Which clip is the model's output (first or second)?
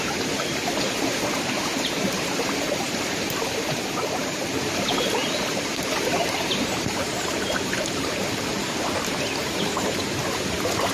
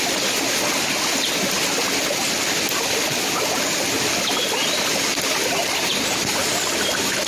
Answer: first